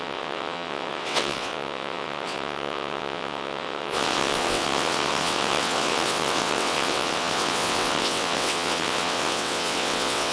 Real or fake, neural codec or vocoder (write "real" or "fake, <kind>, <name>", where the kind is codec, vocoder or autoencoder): fake, vocoder, WaveNeXt